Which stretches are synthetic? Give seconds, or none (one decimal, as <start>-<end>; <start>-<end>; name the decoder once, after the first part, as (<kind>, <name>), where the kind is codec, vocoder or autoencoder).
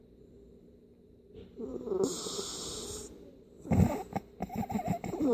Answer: 0.0-1.7 (vocoder, BigVGAN v2); 3.3-5.3